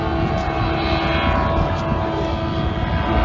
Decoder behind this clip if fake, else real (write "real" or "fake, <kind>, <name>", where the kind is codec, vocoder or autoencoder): real